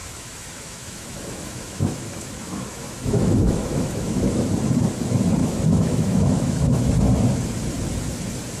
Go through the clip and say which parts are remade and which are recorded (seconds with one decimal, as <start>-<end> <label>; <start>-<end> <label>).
0.0-4.5 remade; 4.5-5.4 recorded; 5.4-6.9 remade; 6.9-8.6 recorded

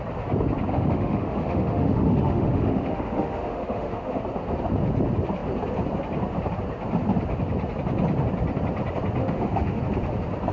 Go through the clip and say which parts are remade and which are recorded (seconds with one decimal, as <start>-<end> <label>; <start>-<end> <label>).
0.0-0.7 recorded; 0.7-4.2 remade; 4.2-9.2 recorded; 9.2-9.8 remade; 9.8-10.5 recorded

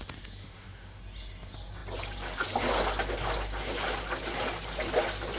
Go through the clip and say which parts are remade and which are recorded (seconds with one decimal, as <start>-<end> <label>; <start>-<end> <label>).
0.0-0.4 recorded; 0.4-1.0 remade; 1.0-5.4 recorded

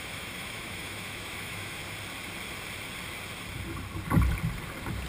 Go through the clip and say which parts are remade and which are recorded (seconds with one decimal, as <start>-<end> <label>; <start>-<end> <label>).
0.0-1.8 remade; 1.8-5.1 recorded

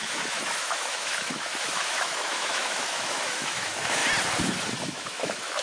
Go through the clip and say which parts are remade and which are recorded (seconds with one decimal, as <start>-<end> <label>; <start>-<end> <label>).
0.0-4.0 remade; 4.0-4.8 recorded; 4.8-5.6 remade

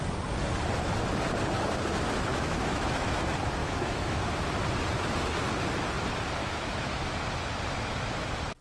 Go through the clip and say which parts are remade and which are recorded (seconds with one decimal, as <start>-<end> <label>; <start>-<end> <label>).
0.0-2.3 recorded; 2.3-3.2 remade; 3.2-3.6 recorded; 3.6-4.2 remade; 4.2-6.4 recorded; 6.4-7.0 remade; 7.0-8.6 recorded